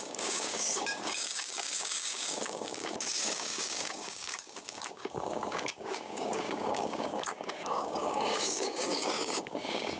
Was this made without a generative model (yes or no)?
no